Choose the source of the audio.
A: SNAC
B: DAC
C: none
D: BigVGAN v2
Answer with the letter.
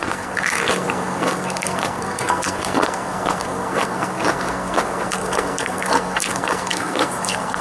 A